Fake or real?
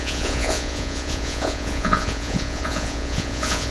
fake